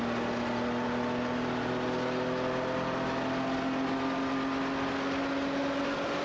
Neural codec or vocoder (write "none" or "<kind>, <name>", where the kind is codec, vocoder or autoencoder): none